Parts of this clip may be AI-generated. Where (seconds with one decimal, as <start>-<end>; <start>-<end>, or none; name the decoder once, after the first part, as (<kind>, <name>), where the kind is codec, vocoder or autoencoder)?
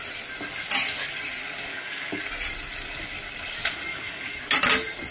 1.7-2.2 (codec, DAC); 3.9-4.4